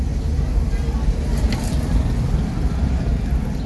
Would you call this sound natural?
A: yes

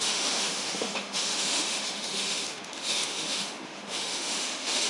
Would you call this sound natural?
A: no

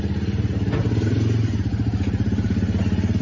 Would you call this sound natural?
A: yes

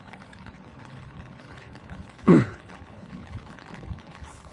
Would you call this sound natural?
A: no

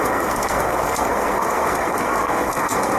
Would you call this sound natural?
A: no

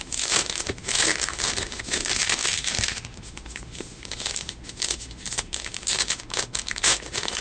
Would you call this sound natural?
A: no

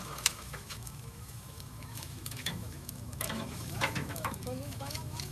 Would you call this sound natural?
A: no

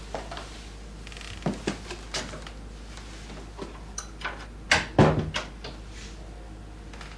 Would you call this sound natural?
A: yes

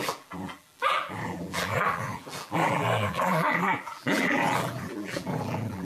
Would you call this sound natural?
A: no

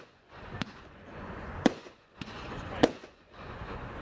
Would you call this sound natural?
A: no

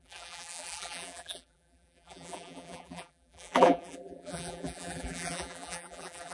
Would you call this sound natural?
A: no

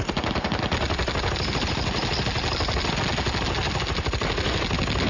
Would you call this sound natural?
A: yes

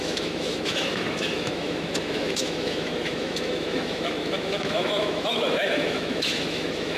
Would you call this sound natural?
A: no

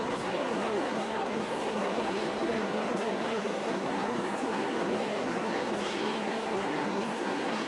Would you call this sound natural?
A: no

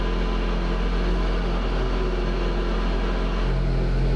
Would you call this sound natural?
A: yes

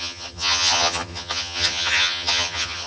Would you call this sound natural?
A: no